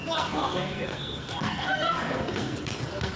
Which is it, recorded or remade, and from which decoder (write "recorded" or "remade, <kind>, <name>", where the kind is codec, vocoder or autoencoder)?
remade, codec, SNAC